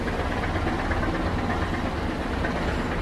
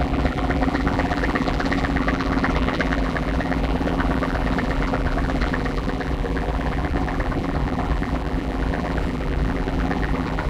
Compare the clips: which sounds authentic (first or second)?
first